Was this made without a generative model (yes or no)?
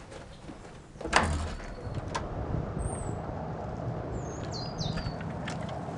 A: yes